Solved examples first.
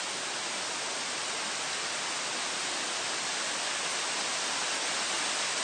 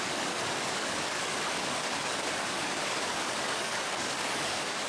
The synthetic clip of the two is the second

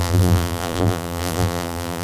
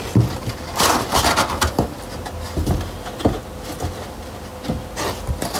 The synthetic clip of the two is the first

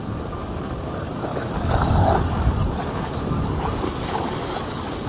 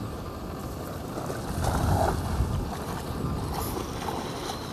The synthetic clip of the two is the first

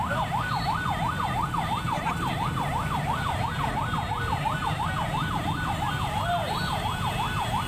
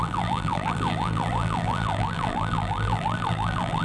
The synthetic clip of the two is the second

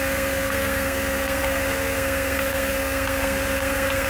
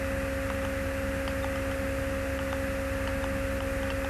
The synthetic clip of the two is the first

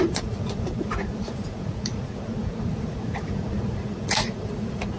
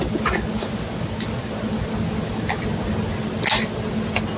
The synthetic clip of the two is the first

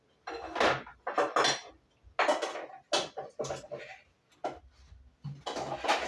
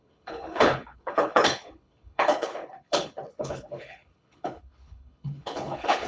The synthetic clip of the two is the second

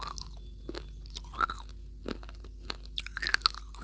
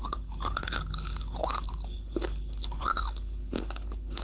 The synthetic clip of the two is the second